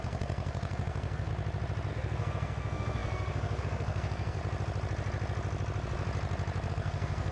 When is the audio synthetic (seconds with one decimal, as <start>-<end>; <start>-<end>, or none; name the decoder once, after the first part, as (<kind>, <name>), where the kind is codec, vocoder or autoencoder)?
0.0-1.3 (codec, SNAC); 1.9-4.4; 6.7-7.3